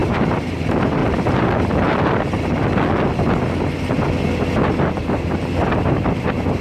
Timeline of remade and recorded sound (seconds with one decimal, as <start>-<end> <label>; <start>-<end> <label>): 0.0-1.0 remade; 1.0-5.0 recorded; 5.0-6.6 remade

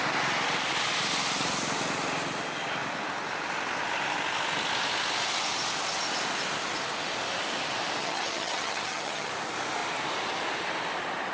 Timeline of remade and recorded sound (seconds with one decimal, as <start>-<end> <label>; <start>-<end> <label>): 0.0-8.0 recorded; 8.0-9.3 remade; 9.3-11.3 recorded

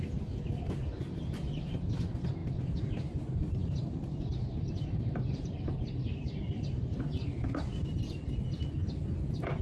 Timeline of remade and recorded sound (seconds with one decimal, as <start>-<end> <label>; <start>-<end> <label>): 0.0-2.4 recorded; 2.4-3.0 remade; 3.0-3.6 recorded; 3.6-7.0 remade; 7.0-9.6 recorded

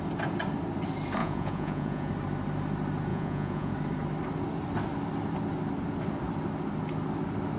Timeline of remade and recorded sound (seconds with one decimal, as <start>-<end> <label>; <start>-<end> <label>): 0.0-1.2 recorded; 1.2-2.1 remade; 2.1-3.1 recorded; 3.1-3.7 remade; 3.7-7.6 recorded

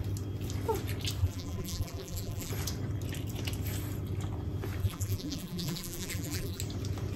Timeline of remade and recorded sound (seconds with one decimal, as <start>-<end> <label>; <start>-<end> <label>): 0.0-1.2 recorded; 1.2-2.5 remade; 2.5-4.8 recorded; 4.8-6.6 remade; 6.6-7.2 recorded

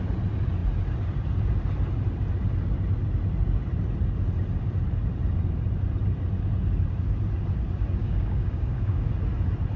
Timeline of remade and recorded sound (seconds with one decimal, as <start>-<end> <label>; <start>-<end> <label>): 0.0-8.0 recorded; 8.0-9.1 remade; 9.1-9.8 recorded

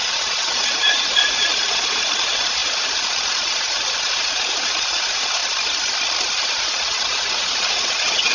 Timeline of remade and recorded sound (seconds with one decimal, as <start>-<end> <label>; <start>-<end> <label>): 0.0-5.4 remade; 5.4-6.4 recorded; 6.4-8.3 remade

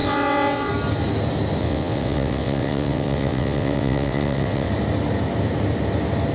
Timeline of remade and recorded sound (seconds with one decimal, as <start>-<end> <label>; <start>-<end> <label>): 0.0-0.7 remade; 0.7-1.6 recorded; 1.6-4.7 remade; 4.7-6.3 recorded